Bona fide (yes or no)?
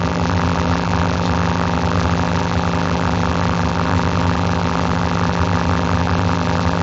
no